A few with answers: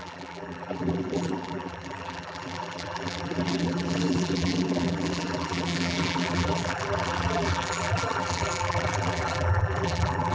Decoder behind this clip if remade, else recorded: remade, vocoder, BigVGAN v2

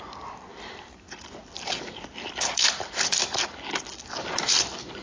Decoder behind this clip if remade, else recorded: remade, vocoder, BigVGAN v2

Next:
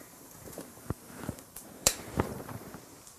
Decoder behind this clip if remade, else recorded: remade, vocoder, BigVGAN v2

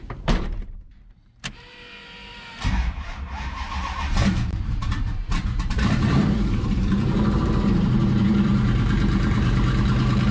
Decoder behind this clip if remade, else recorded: remade, vocoder, BigVGAN v2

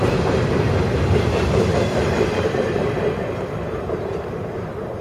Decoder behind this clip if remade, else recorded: remade, vocoder, BigVGAN v2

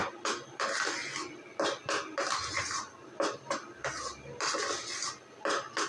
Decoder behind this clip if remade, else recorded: recorded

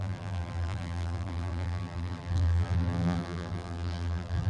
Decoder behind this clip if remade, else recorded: remade, vocoder, BigVGAN v2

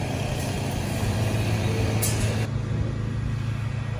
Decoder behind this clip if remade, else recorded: recorded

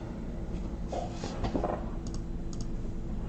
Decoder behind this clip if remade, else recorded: recorded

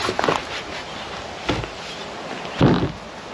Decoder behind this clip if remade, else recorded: recorded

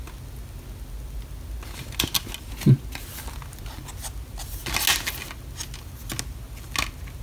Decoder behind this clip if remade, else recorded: recorded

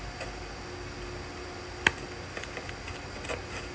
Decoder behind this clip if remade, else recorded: recorded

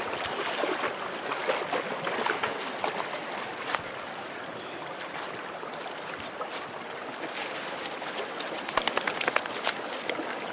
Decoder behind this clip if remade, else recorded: recorded